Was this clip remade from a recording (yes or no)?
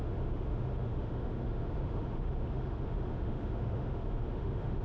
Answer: yes